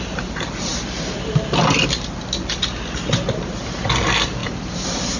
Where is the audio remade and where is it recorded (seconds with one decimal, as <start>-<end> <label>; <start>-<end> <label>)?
0.0-4.4 recorded; 4.4-5.2 remade